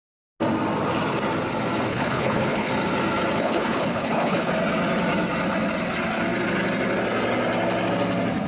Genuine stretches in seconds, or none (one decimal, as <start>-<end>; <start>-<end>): 0.0-1.9; 2.7-3.4; 4.5-8.5